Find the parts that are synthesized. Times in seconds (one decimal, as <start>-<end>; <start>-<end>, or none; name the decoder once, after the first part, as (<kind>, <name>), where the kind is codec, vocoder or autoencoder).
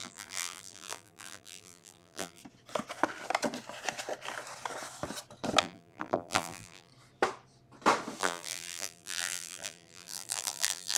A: 0.0-2.4 (vocoder, BigVGAN v2); 5.6-6.9; 8.2-11.0